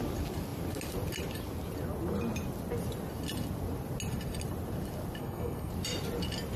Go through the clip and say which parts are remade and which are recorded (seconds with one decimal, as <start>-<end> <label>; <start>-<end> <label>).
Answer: 0.0-5.2 recorded; 5.2-5.7 remade; 5.7-6.6 recorded